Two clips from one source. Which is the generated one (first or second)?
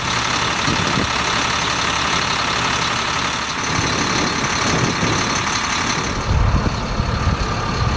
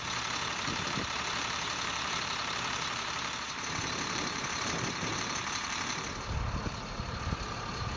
second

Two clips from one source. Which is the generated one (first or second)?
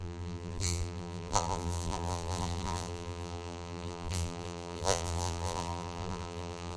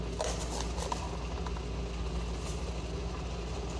first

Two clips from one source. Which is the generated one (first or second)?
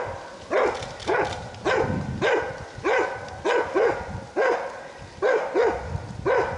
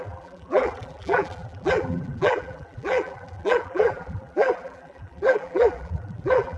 second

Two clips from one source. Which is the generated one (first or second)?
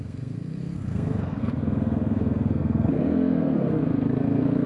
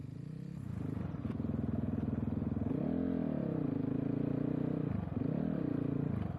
first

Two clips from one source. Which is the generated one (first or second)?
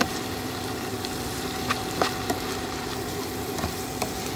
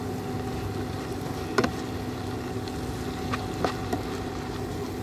first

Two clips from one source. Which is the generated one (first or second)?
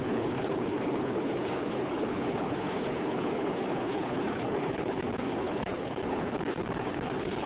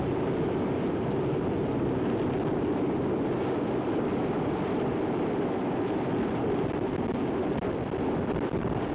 first